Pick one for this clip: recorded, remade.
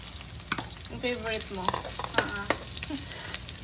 recorded